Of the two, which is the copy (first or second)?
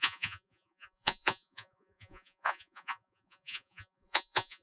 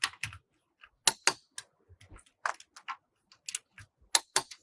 first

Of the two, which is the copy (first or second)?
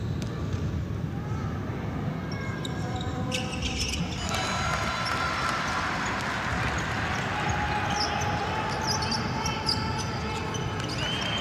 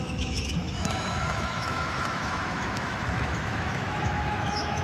second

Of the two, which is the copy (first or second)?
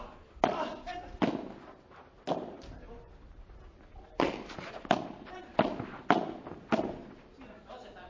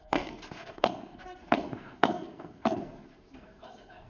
second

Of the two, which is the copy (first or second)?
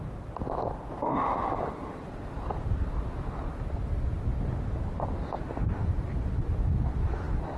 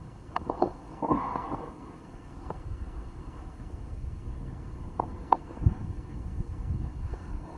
second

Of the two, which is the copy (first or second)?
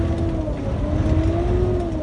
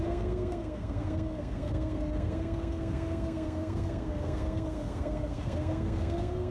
second